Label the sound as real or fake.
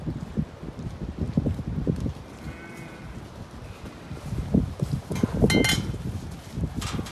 real